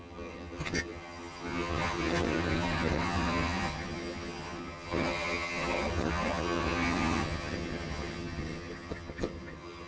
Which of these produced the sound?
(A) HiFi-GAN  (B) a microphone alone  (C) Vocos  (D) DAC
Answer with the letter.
A